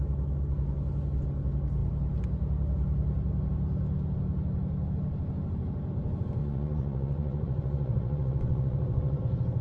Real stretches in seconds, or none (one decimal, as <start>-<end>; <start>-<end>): 0.0-6.4; 9.2-9.6